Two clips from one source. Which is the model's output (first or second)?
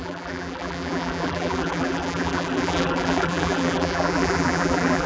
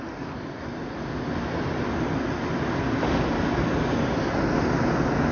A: first